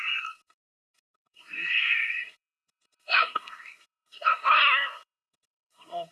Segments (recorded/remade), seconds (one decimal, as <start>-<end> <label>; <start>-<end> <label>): 0.0-6.1 remade